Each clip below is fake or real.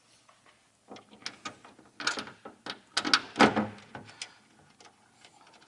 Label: real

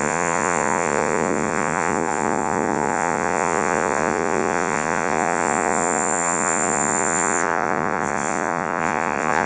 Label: fake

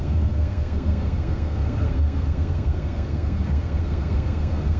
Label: fake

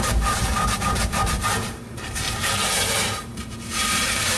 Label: fake